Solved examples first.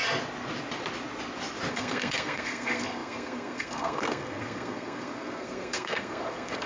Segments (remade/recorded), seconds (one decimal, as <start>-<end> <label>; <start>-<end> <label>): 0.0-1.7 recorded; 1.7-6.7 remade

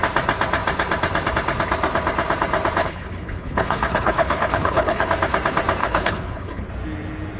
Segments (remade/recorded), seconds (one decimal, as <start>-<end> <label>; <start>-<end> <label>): 0.0-2.8 recorded; 2.8-5.1 remade; 5.1-5.8 recorded; 5.8-6.7 remade; 6.7-7.4 recorded

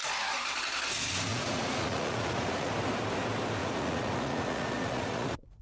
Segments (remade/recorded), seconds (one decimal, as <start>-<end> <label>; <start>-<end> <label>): 0.0-1.3 recorded; 1.3-2.7 remade; 2.7-3.6 recorded; 3.6-5.6 remade

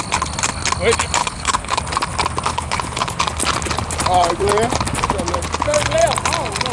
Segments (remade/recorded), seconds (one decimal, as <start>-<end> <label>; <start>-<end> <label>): 0.0-1.2 recorded; 1.2-1.8 remade; 1.8-2.5 recorded; 2.5-3.2 remade; 3.2-6.7 recorded

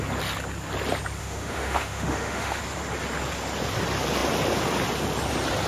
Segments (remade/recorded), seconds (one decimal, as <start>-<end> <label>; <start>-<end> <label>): 0.0-1.2 recorded; 1.2-2.6 remade; 2.6-5.7 recorded

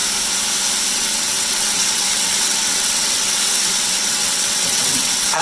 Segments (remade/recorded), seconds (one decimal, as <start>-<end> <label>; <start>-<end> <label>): 0.0-0.9 recorded; 0.9-5.4 remade